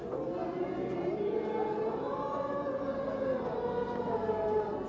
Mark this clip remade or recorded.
recorded